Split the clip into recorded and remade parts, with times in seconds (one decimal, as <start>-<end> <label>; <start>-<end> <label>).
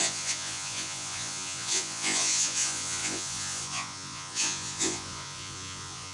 0.0-6.1 remade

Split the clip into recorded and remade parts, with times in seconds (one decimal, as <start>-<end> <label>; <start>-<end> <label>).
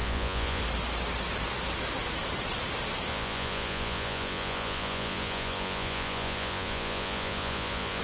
0.0-0.6 remade; 0.6-3.1 recorded; 3.1-8.0 remade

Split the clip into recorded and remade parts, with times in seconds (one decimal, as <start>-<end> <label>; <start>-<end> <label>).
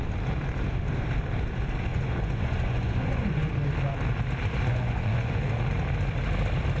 0.0-1.9 recorded; 1.9-3.5 remade; 3.5-4.7 recorded; 4.7-5.4 remade; 5.4-6.8 recorded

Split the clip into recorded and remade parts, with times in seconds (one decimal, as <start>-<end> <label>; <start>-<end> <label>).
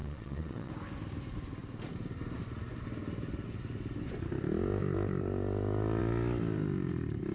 0.0-0.7 remade; 0.7-7.3 recorded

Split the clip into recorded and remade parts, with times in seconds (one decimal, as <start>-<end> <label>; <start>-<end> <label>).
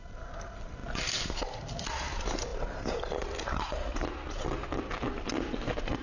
0.0-6.0 recorded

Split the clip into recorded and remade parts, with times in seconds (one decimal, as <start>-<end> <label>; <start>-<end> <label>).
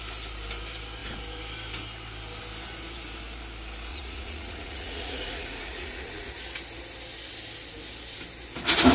0.0-3.9 recorded; 3.9-6.3 remade; 6.3-8.9 recorded